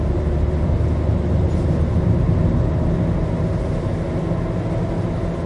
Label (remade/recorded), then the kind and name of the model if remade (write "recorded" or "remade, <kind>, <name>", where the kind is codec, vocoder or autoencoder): recorded